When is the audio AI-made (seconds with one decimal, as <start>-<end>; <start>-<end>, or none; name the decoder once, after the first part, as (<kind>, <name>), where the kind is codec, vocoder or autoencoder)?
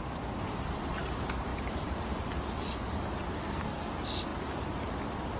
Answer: 3.4-3.9 (codec, SNAC)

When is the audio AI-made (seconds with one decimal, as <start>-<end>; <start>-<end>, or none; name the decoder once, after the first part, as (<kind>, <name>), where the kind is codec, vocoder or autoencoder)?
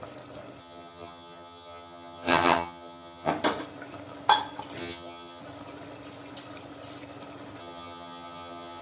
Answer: 0.6-3.3 (vocoder, HiFi-GAN); 4.8-5.4; 7.6-8.8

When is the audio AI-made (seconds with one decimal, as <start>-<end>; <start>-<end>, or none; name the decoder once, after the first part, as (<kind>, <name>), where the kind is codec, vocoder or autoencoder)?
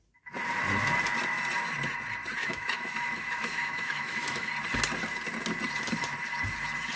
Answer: 2.4-4.5 (autoencoder, DAC-VAE)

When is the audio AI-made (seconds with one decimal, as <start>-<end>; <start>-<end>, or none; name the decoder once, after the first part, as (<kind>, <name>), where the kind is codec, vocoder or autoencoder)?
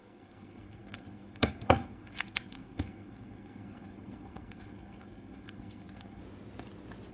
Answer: 0.0-6.2 (codec, SNAC)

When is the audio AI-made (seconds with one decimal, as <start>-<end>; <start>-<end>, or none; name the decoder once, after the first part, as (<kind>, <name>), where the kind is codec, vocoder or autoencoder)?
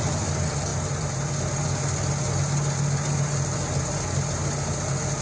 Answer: none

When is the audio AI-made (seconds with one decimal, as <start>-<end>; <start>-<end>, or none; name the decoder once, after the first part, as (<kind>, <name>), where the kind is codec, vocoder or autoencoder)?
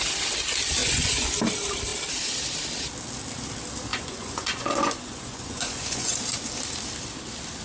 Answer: 0.8-1.4 (vocoder, Vocos); 3.9-6.1